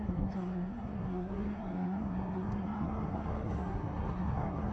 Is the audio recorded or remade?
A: remade